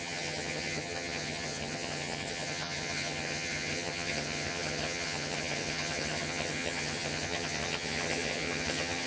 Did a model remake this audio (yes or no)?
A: yes